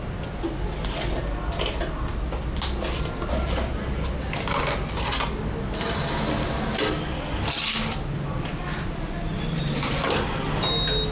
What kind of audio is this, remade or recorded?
recorded